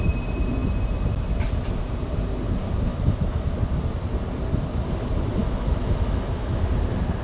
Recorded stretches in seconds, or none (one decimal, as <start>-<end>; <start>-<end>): 0.0-2.9; 3.5-5.4; 6.6-7.2